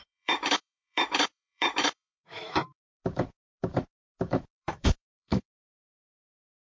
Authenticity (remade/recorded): remade